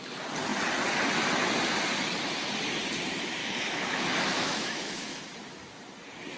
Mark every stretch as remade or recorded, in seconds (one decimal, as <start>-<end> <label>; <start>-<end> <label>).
0.0-3.4 recorded; 3.4-5.2 remade; 5.2-6.4 recorded